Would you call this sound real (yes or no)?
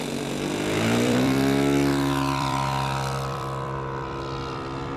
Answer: no